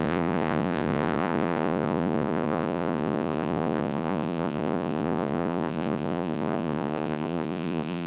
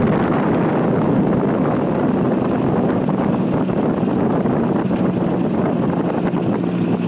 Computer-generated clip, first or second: first